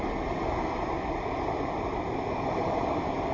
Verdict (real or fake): real